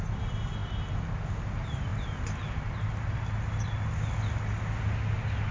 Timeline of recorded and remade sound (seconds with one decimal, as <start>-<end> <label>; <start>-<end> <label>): 0.0-5.5 recorded